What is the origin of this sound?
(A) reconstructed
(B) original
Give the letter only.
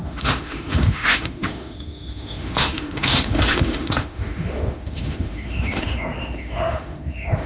A